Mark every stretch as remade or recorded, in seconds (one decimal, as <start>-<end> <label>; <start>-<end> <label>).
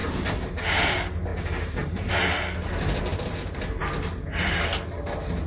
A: 0.0-0.5 remade; 0.5-1.3 recorded; 1.3-2.1 remade; 2.1-3.1 recorded; 3.1-3.8 remade; 3.8-5.5 recorded